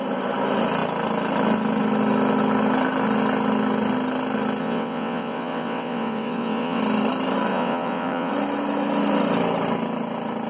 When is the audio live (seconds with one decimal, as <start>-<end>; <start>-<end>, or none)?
0.0-4.6; 6.8-7.5; 8.3-10.5